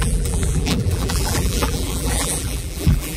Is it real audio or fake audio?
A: fake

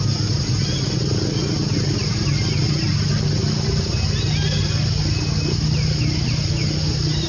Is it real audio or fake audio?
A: real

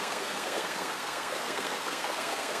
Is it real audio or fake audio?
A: fake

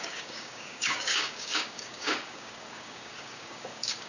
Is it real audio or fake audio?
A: fake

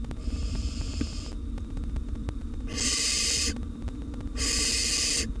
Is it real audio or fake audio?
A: real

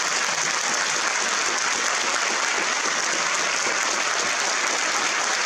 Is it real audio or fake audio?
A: real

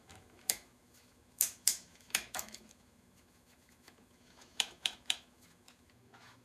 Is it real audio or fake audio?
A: fake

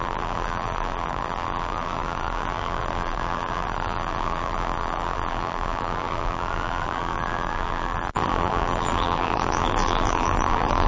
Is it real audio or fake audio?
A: fake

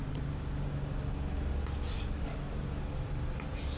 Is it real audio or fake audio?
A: real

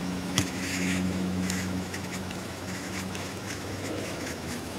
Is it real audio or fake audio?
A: fake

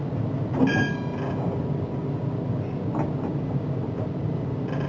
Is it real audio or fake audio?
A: real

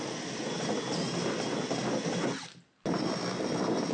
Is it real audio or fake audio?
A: real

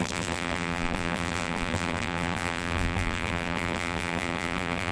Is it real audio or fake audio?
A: fake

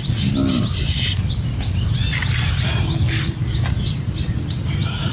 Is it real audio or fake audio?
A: real